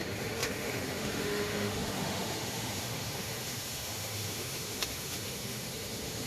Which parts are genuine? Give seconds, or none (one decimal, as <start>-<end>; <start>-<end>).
none